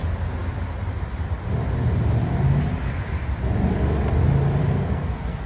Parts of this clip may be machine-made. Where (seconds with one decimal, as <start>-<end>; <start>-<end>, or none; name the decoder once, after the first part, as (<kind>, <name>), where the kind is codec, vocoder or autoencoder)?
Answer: 4.6-5.5 (codec, SNAC)